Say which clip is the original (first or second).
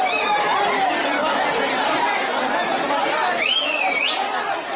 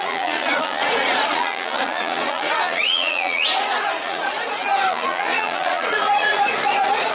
first